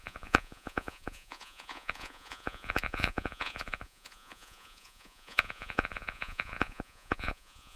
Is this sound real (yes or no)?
no